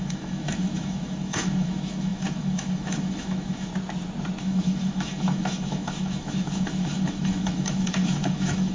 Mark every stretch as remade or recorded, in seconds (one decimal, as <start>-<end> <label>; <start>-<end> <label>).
0.0-3.7 remade; 3.7-4.4 recorded; 4.4-8.7 remade